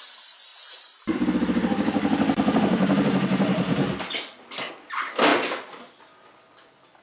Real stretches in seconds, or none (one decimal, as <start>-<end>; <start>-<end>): 0.0-7.0